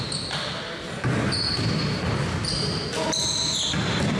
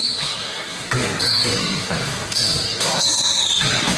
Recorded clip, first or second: first